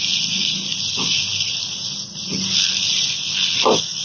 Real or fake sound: real